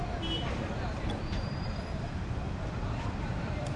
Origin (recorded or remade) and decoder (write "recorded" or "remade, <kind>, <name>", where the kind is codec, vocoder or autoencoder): remade, vocoder, BigVGAN v2